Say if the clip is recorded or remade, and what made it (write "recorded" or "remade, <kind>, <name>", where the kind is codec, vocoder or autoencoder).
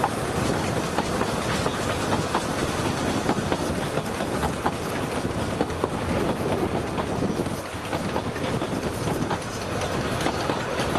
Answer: recorded